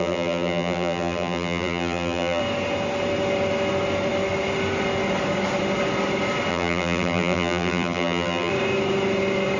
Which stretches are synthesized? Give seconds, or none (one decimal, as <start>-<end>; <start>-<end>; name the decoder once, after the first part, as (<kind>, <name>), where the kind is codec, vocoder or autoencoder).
0.0-2.4 (vocoder, BigVGAN v2); 6.5-8.5